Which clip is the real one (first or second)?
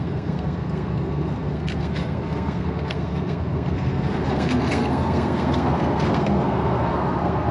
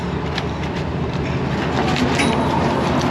second